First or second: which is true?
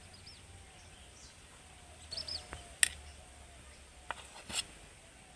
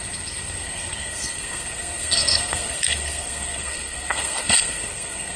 first